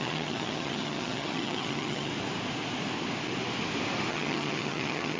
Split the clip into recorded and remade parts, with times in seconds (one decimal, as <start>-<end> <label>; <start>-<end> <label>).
0.0-2.1 remade; 2.1-4.1 recorded; 4.1-5.2 remade